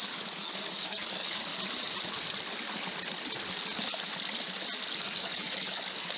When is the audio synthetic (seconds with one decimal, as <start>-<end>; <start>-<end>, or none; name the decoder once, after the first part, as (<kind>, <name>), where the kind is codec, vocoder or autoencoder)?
0.0-1.5 (codec, DAC); 5.0-6.2